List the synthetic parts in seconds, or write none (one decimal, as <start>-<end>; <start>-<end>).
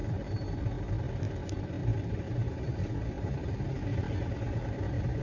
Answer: 0.0-0.6; 1.8-5.2